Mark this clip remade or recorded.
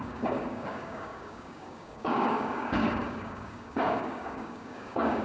remade